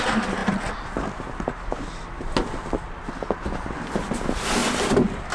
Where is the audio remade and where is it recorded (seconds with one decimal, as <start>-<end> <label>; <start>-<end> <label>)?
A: 0.0-5.3 recorded